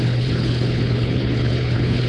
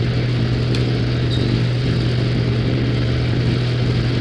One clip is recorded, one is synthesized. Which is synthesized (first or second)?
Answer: first